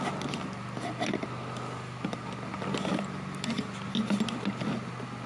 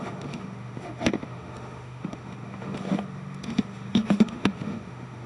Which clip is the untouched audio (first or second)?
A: first